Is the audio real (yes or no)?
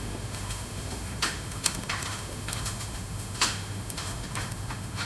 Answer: no